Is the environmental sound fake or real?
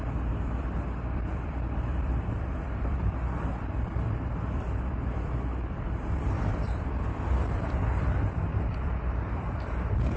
fake